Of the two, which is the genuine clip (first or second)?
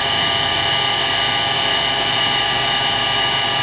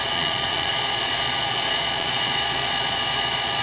first